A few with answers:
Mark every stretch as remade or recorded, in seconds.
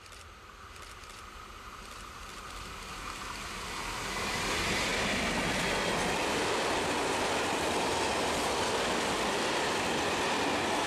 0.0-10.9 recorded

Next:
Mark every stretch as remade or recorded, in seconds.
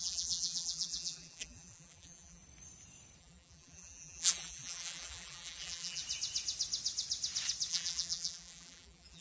0.0-2.4 remade; 2.4-3.2 recorded; 3.2-6.0 remade; 6.0-7.7 recorded; 7.7-9.2 remade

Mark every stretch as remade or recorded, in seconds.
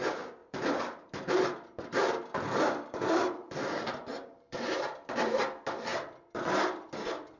0.0-0.4 recorded; 0.4-4.8 remade; 4.8-7.4 recorded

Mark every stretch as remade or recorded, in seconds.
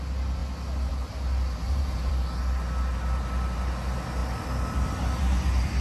0.0-1.6 recorded; 1.6-2.1 remade; 2.1-5.8 recorded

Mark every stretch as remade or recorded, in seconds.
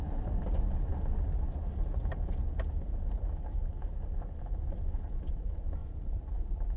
0.0-5.8 recorded; 5.8-6.8 remade